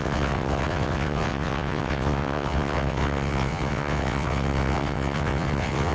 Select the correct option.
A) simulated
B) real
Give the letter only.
A